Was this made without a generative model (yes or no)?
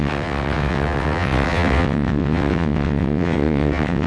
no